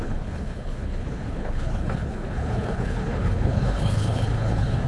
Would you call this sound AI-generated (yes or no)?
yes